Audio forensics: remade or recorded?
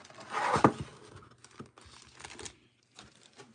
recorded